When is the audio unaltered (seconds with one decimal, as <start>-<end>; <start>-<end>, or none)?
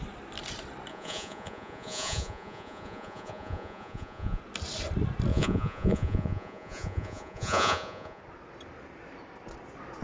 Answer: 0.0-0.9; 4.4-5.3; 8.2-10.0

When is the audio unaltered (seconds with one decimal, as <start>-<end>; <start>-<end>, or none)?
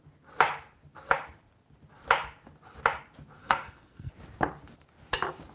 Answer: 0.0-3.4; 4.1-5.5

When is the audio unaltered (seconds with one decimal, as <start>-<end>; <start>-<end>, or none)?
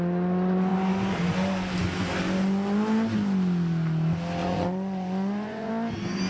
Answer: 0.0-4.4; 5.7-6.3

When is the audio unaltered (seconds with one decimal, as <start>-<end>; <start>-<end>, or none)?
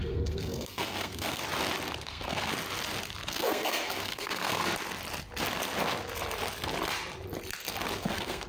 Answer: 1.4-2.0; 2.5-3.3; 4.6-8.0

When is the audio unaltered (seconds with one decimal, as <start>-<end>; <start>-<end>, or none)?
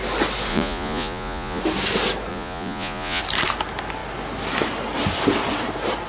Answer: 0.0-0.5; 1.6-2.3; 3.2-6.1